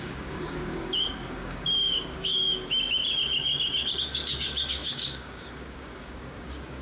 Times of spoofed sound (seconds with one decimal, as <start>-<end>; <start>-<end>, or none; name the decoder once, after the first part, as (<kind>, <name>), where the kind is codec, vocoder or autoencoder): 0.0-6.8 (codec, DAC)